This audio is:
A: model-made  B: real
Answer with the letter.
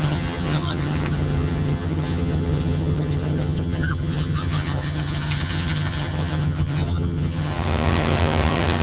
A